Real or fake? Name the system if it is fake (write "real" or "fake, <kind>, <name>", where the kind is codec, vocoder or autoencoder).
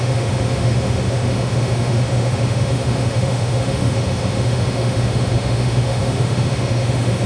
fake, autoencoder, DAC-VAE